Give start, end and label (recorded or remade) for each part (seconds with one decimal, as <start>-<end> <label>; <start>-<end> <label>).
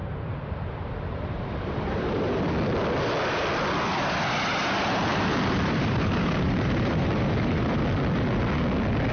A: 0.0-2.4 remade; 2.4-5.1 recorded; 5.1-7.8 remade; 7.8-9.1 recorded